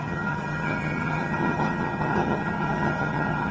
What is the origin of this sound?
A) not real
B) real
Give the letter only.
A